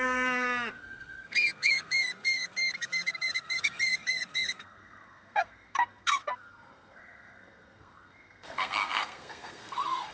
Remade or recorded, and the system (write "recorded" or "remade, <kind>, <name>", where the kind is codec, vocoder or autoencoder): remade, codec, SNAC